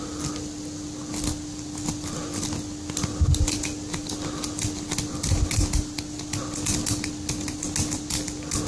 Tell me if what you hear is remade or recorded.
recorded